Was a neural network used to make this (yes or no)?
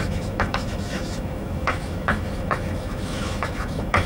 yes